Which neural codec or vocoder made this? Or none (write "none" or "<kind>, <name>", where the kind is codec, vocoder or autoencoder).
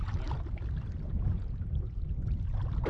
none